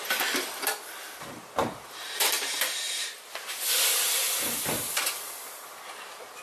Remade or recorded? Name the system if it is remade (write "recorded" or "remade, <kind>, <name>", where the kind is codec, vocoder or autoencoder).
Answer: recorded